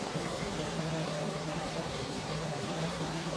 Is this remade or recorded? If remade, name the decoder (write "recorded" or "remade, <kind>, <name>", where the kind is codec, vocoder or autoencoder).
remade, codec, SNAC